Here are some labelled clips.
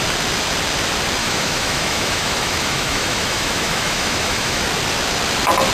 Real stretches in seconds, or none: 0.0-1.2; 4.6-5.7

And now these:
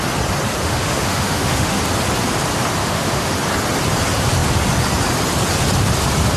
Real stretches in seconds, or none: 0.0-0.6; 1.8-2.8; 3.3-6.4

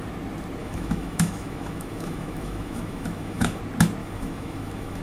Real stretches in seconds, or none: 0.0-0.6; 3.6-4.0